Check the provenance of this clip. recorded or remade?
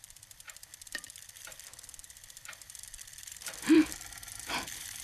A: remade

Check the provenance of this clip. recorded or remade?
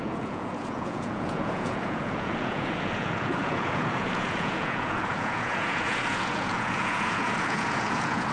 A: remade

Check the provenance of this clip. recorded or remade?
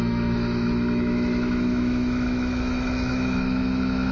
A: remade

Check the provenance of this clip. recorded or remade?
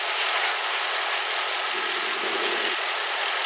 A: remade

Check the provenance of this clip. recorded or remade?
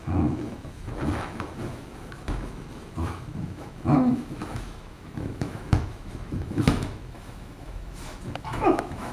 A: remade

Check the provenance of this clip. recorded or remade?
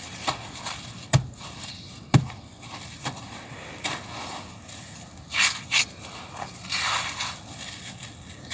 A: recorded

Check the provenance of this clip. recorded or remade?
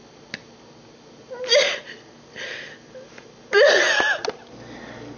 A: recorded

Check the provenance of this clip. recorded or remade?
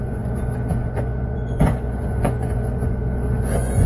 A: remade